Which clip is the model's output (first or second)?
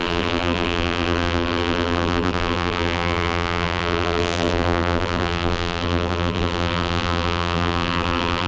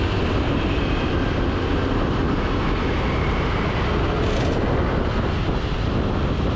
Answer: first